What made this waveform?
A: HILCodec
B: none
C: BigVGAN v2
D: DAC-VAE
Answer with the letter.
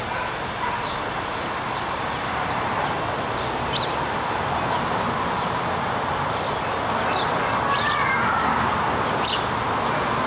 B